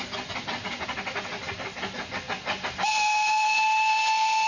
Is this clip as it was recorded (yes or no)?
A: yes